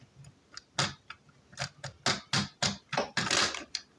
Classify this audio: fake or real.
real